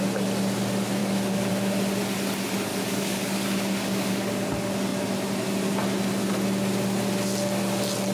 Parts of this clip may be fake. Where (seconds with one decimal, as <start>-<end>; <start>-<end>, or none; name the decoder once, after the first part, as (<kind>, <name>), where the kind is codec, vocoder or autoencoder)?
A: 1.0-1.5 (codec, DAC); 2.7-4.3